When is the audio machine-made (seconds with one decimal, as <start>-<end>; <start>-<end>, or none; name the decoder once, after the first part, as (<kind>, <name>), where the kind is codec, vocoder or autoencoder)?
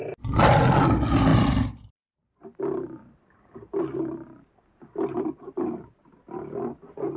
1.3-5.6 (vocoder, BigVGAN v2)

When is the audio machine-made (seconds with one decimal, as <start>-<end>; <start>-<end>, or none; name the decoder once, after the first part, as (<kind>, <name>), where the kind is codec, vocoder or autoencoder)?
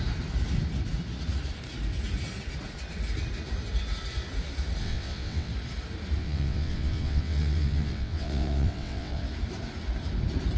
4.8-5.5 (vocoder, WaveNeXt); 6.2-9.2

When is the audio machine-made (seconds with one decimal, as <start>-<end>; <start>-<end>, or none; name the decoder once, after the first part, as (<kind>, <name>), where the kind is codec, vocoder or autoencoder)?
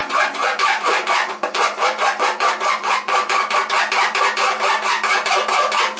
0.0-3.5 (vocoder, Vocos)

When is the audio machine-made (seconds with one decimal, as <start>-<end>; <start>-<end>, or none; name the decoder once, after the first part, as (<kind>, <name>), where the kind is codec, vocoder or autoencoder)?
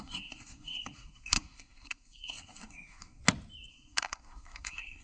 0.0-3.2 (codec, SNAC); 3.7-5.0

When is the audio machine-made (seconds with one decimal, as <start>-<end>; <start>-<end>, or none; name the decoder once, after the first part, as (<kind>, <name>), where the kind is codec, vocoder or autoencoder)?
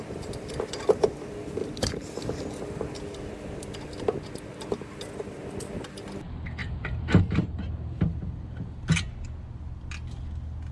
1.6-2.4 (vocoder, BigVGAN v2); 4.5-5.0; 6.6-7.2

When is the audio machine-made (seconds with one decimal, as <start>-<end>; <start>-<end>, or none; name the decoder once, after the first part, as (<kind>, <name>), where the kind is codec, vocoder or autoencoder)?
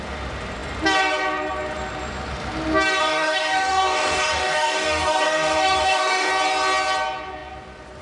3.0-6.3 (codec, DAC)